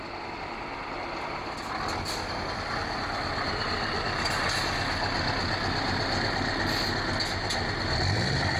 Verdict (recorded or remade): recorded